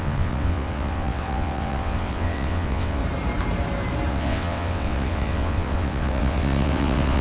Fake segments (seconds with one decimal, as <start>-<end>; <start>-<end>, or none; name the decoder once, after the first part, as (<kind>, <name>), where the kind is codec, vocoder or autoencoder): 0.0-3.0 (vocoder, WaveNeXt); 4.1-7.2

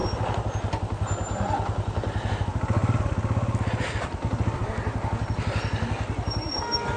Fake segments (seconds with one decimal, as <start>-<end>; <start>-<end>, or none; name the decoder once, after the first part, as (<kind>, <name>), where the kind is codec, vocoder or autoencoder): none

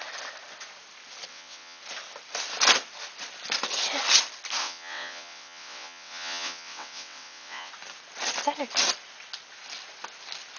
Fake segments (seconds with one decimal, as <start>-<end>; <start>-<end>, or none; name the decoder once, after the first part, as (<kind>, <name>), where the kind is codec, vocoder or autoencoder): 1.3-1.8 (vocoder, WaveNeXt); 4.6-7.7

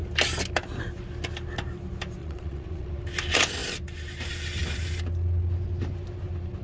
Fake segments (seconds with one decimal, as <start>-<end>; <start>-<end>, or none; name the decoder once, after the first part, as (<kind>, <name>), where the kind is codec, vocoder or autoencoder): 2.2-2.9 (vocoder, WaveNeXt)

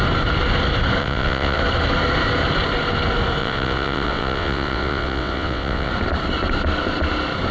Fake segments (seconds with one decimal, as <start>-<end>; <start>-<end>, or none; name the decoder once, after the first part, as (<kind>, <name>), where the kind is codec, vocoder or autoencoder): 1.0-1.6 (vocoder, WaveNeXt); 3.4-5.9

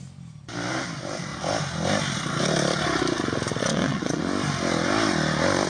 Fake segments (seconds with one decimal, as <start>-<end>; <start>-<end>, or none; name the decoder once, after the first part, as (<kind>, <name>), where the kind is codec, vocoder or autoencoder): 3.6-4.2 (vocoder, WaveNeXt)

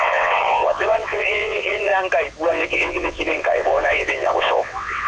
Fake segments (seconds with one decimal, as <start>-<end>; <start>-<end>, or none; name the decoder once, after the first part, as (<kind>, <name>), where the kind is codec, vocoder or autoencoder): 0.0-1.9 (vocoder, WaveNeXt); 2.5-5.1

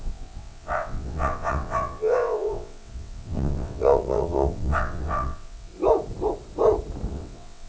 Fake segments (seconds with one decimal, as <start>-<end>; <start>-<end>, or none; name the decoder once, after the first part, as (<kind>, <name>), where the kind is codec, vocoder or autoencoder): 0.0-5.7 (vocoder, WaveNeXt); 7.1-7.7